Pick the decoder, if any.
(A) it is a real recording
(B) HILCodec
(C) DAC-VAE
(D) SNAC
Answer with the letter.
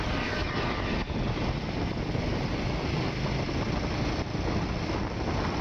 A